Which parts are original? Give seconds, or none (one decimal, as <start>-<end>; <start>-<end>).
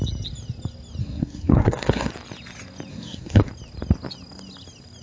0.0-1.0; 2.1-2.9; 3.5-5.0